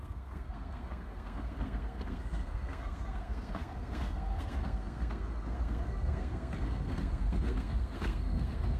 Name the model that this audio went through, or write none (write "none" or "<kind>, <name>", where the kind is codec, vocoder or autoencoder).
codec, SNAC